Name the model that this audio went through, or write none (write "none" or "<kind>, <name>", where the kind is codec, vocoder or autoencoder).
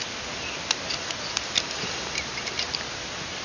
none